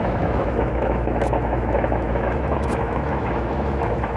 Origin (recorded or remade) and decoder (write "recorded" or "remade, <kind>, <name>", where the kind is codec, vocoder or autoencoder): remade, autoencoder, DAC-VAE